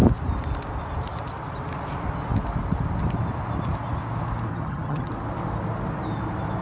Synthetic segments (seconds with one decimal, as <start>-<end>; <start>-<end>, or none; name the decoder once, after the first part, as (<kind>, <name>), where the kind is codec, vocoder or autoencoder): 4.5-5.1 (vocoder, HiFi-GAN)